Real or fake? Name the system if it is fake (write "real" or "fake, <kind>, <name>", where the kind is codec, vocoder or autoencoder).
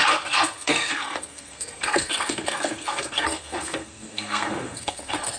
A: fake, codec, SNAC